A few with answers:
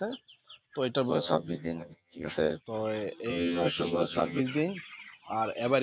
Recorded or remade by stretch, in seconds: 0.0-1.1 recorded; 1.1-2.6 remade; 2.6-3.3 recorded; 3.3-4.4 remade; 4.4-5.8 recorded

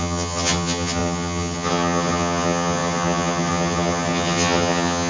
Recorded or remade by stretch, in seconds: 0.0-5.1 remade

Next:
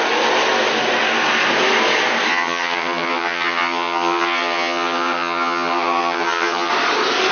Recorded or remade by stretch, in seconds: 0.0-2.3 recorded; 2.3-6.7 remade; 6.7-7.3 recorded